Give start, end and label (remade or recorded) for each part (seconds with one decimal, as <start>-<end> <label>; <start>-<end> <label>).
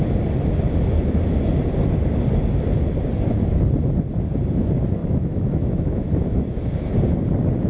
0.0-5.0 recorded; 5.0-6.9 remade; 6.9-7.7 recorded